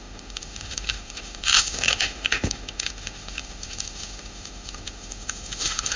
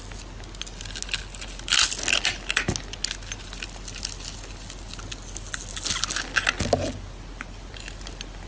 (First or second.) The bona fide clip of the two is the second